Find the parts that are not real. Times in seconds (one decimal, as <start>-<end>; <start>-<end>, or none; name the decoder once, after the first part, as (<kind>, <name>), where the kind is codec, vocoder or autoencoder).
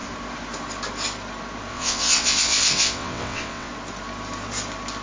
1.7-3.7 (vocoder, WaveNeXt)